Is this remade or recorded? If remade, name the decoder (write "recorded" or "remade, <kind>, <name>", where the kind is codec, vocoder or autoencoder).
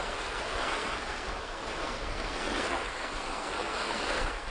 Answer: remade, codec, SNAC